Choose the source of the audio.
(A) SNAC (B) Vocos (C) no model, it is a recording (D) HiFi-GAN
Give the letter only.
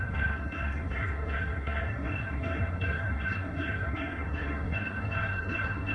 A